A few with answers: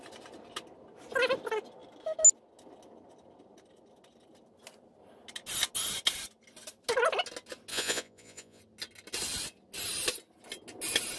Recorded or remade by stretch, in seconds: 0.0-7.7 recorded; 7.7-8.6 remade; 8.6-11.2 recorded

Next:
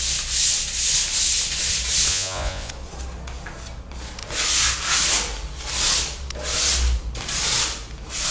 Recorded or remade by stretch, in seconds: 0.0-2.1 recorded; 2.1-2.7 remade; 2.7-8.3 recorded

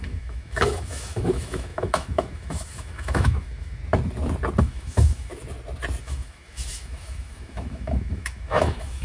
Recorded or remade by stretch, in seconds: 0.0-3.8 remade; 3.8-4.6 recorded; 4.6-5.3 remade; 5.3-6.0 recorded; 6.0-9.0 remade

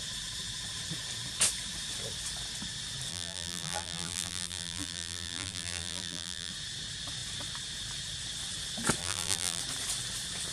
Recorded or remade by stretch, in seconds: 0.0-3.1 recorded; 3.1-6.5 remade; 6.5-9.0 recorded; 9.0-9.6 remade; 9.6-10.5 recorded

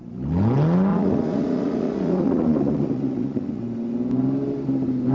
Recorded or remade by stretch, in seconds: 0.0-0.9 recorded; 0.9-3.6 remade; 3.6-5.1 recorded

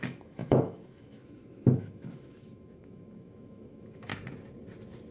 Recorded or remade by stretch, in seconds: 0.0-4.1 remade; 4.1-5.1 recorded